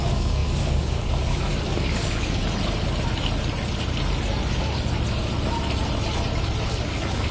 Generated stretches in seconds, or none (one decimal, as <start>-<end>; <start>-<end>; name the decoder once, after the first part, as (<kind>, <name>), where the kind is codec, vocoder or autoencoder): 0.0-2.4 (codec, DAC); 6.6-7.3

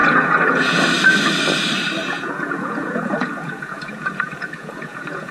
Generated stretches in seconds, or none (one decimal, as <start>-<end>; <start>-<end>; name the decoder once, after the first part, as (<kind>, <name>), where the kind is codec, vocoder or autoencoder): 0.0-0.8 (vocoder, Vocos); 2.0-5.3

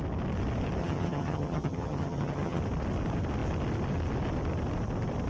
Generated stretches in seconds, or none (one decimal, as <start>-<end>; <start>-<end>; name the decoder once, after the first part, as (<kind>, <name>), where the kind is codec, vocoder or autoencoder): 0.8-2.6 (vocoder, HiFi-GAN)

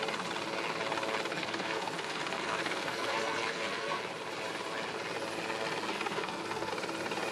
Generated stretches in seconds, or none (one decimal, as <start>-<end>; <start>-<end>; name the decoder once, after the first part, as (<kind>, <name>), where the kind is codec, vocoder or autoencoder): 1.3-4.0 (codec, SNAC); 5.9-6.7